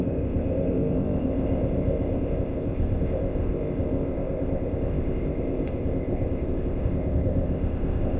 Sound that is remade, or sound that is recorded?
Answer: remade